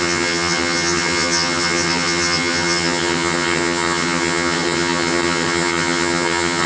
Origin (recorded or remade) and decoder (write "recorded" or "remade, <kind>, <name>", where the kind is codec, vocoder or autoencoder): remade, vocoder, HiFi-GAN